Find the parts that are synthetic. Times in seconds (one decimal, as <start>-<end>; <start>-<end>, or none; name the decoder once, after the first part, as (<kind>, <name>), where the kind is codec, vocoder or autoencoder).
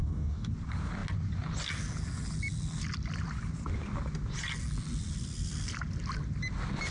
0.0-0.5 (codec, DAC)